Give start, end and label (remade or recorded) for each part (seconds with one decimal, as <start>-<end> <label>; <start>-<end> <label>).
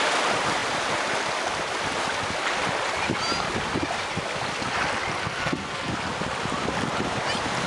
0.0-5.2 recorded; 5.2-5.9 remade; 5.9-7.7 recorded